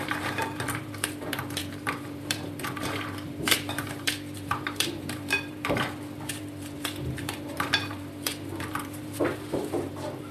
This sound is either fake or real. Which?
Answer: fake